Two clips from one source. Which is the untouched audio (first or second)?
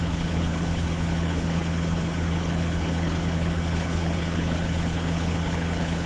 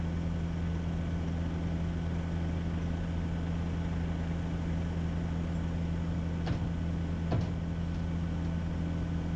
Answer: second